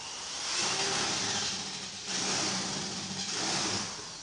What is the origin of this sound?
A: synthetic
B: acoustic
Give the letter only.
B